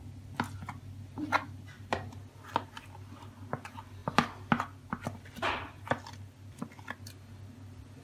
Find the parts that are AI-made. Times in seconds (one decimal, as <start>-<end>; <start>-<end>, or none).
none